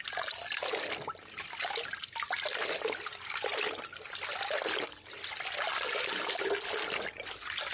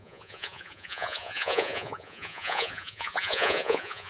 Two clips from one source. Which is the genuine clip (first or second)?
first